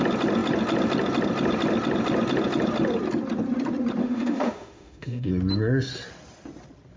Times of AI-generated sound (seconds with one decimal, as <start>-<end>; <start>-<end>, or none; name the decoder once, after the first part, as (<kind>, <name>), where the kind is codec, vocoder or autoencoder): 4.0-5.3 (autoencoder, DAC-VAE)